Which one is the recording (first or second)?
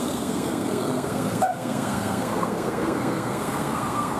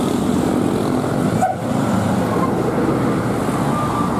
second